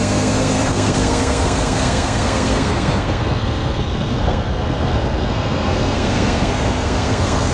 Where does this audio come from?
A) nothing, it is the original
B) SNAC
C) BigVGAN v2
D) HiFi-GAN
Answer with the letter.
B